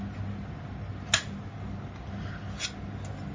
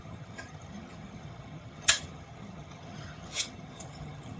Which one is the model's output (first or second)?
second